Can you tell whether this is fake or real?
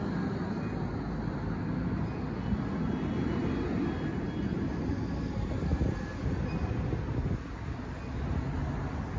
real